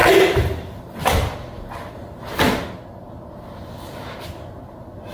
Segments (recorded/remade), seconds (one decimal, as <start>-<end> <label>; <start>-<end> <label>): 0.0-5.1 recorded